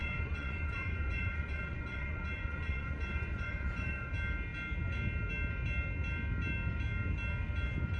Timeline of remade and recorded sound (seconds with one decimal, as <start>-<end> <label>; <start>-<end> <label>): 0.0-4.1 remade; 4.1-8.0 recorded